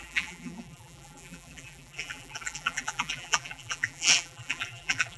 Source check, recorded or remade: remade